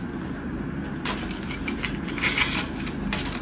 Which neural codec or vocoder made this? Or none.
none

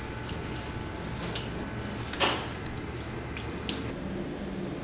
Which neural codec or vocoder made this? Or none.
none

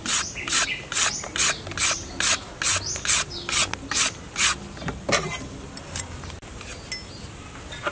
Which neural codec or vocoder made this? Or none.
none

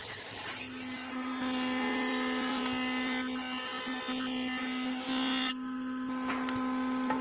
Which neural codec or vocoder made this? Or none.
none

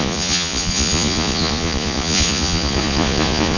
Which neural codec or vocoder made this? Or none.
vocoder, Vocos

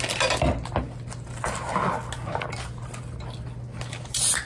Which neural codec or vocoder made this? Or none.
none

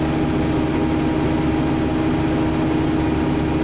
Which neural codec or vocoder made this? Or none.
none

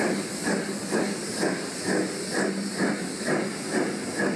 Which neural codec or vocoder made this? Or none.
none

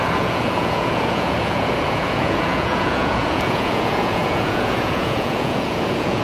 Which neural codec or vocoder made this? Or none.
vocoder, Vocos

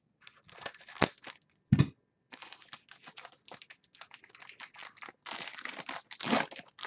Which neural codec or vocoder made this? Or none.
none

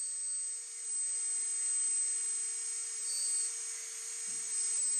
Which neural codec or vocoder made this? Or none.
none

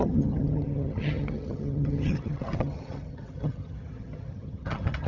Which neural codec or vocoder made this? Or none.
vocoder, HiFi-GAN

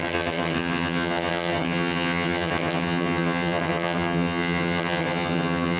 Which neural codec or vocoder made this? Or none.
vocoder, HiFi-GAN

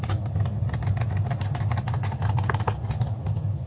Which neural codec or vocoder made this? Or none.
none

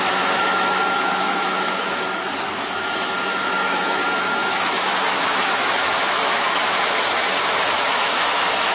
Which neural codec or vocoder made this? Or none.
autoencoder, DAC-VAE